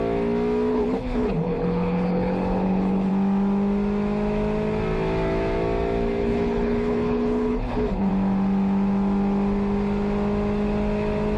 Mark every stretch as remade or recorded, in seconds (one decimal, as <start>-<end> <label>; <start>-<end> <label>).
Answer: 0.0-0.7 recorded; 0.7-3.1 remade; 3.1-6.2 recorded; 6.2-8.1 remade; 8.1-11.4 recorded